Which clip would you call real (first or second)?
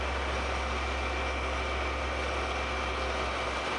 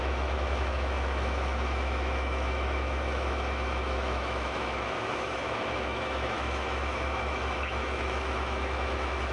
first